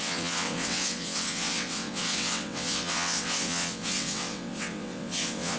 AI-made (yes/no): yes